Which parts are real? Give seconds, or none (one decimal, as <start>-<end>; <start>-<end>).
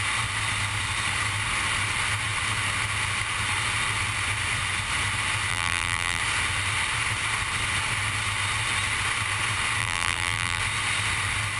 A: 0.0-5.5; 6.2-9.8; 10.6-11.6